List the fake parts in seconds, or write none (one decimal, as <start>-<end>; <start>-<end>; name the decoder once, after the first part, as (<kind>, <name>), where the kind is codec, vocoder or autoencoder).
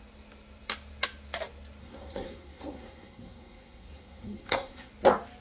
1.8-4.9 (codec, SNAC)